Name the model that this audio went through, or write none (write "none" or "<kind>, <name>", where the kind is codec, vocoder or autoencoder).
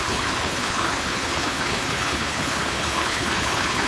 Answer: codec, HILCodec